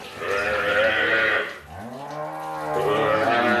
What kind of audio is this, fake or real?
real